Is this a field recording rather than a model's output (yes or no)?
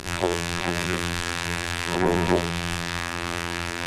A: no